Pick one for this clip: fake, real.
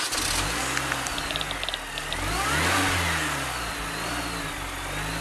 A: real